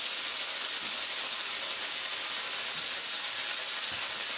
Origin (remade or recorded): recorded